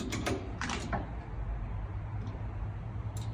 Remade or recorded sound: recorded